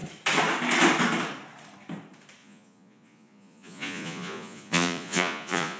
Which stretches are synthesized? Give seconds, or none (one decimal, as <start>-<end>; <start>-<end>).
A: 2.4-5.8